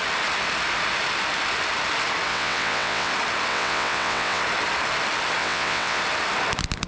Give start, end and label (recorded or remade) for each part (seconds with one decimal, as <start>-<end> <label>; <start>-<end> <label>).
0.0-2.3 recorded; 2.3-3.1 remade; 3.1-3.5 recorded; 3.5-4.4 remade; 4.4-5.4 recorded; 5.4-6.0 remade; 6.0-6.9 recorded